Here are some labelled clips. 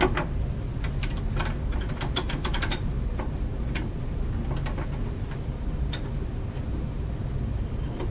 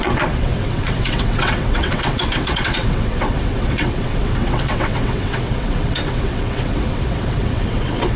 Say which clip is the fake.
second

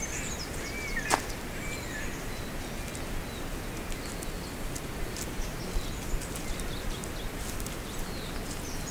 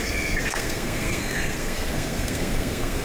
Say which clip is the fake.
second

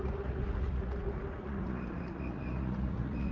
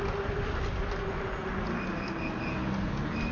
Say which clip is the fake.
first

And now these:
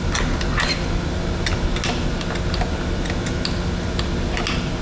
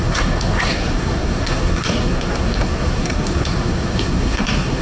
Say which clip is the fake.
second